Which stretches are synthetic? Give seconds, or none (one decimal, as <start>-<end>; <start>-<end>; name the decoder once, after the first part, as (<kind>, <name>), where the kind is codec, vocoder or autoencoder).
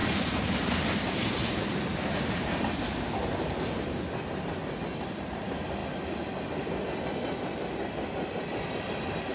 none